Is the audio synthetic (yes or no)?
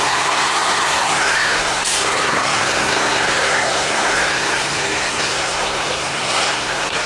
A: yes